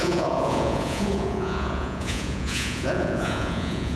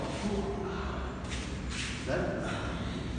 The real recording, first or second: second